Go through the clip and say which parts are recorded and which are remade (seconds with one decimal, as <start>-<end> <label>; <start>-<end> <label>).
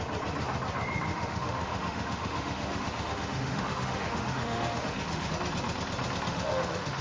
0.0-1.1 recorded; 1.1-5.3 remade; 5.3-6.3 recorded; 6.3-7.0 remade